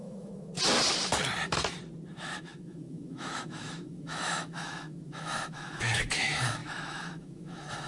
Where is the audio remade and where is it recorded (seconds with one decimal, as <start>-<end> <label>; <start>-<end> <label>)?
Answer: 0.0-0.5 remade; 0.5-2.1 recorded; 2.1-7.9 remade